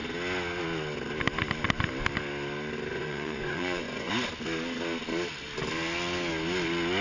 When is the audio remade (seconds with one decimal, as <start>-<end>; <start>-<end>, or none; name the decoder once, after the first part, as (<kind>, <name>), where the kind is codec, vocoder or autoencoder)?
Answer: 2.9-4.1 (vocoder, Vocos)

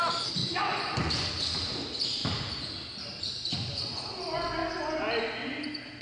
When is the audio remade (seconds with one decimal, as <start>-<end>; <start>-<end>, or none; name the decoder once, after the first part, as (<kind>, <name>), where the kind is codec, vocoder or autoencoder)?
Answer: 0.4-1.3 (vocoder, Vocos)

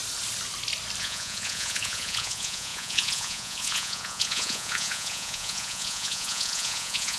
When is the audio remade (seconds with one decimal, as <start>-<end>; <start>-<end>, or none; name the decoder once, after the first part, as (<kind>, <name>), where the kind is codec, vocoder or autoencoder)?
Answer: 1.0-7.2 (vocoder, Vocos)

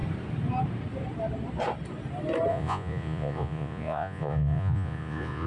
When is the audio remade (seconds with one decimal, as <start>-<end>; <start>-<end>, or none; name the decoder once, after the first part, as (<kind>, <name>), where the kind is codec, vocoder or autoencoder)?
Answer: 2.5-5.5 (vocoder, Vocos)

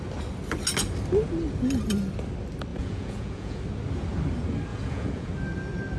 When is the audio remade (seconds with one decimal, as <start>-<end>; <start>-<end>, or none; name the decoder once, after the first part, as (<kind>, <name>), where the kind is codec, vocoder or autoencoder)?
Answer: 2.7-3.6 (vocoder, Vocos); 4.7-5.3